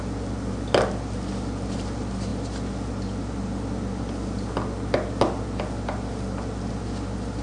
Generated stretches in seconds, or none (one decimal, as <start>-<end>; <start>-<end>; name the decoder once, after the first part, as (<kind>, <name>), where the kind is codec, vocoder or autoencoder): none